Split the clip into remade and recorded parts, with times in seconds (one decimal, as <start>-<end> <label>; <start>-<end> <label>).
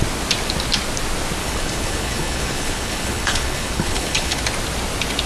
0.0-1.4 recorded; 1.4-4.4 remade; 4.4-5.3 recorded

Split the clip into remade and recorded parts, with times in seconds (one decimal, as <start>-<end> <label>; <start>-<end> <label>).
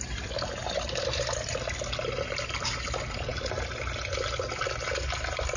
0.0-5.6 recorded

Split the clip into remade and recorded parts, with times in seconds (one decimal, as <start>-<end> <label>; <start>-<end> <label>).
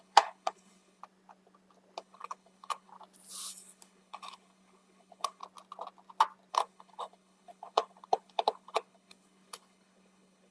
0.0-1.0 remade; 1.0-2.0 recorded; 2.0-2.9 remade; 2.9-3.5 recorded; 3.5-5.4 remade; 5.4-6.5 recorded; 6.5-10.5 remade